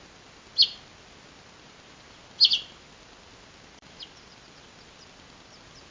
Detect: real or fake real